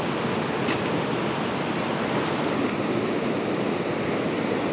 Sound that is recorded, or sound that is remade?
recorded